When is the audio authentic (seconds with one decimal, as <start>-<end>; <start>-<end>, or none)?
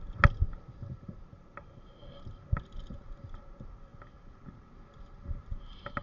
0.0-6.0